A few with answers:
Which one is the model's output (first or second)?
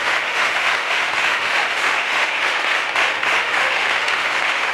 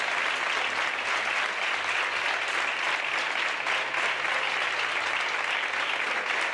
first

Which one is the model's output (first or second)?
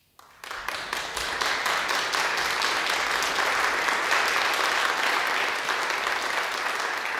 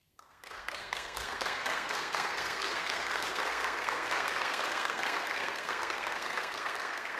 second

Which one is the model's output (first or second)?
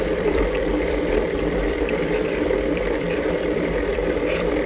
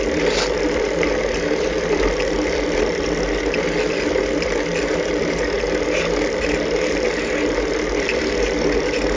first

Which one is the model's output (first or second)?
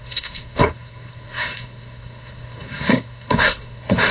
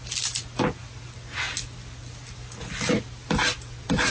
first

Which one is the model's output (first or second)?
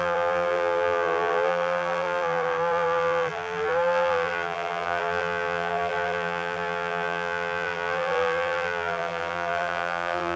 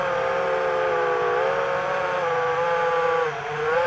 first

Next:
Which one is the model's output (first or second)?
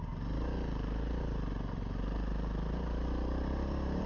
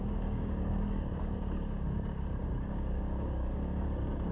second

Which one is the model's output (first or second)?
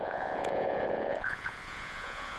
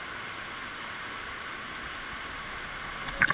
first